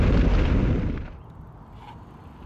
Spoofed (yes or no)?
no